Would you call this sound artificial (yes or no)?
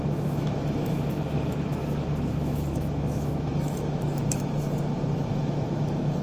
yes